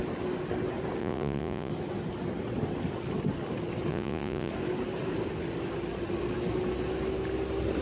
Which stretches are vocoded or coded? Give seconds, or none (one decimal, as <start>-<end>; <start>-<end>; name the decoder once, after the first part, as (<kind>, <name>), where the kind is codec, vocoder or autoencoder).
1.0-1.7 (vocoder, Vocos); 3.9-4.5